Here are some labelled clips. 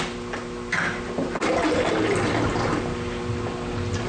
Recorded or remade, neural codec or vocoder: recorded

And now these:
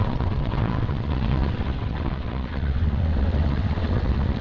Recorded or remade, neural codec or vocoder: remade, vocoder, WaveNeXt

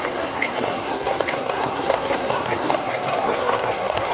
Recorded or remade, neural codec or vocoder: remade, codec, SNAC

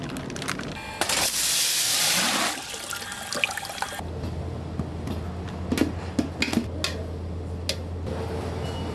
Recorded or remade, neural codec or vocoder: recorded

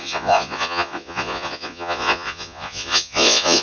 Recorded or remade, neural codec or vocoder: remade, vocoder, Vocos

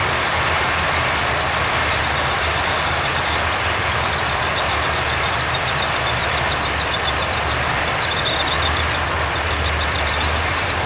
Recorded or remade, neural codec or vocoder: recorded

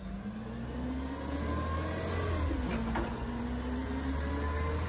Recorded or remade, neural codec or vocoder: recorded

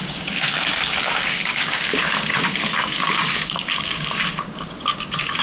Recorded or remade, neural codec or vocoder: remade, codec, DAC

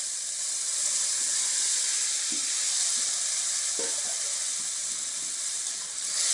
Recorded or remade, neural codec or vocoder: remade, vocoder, BigVGAN v2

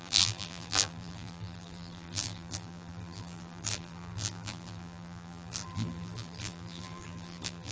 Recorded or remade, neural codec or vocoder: remade, vocoder, BigVGAN v2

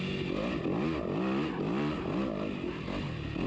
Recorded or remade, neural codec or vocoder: recorded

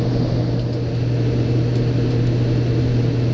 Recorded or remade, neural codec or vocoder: recorded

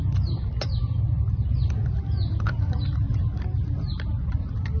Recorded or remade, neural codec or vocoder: recorded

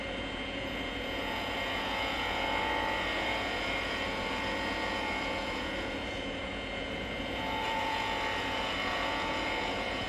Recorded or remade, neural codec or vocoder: remade, vocoder, Vocos